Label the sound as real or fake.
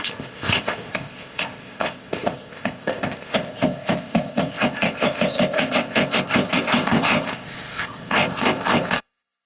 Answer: fake